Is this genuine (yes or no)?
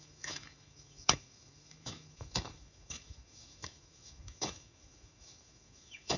no